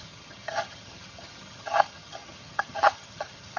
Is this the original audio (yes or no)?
no